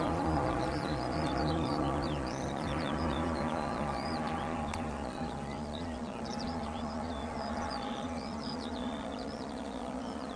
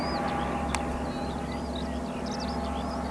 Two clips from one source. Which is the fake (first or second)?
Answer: first